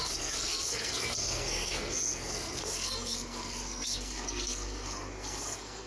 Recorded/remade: remade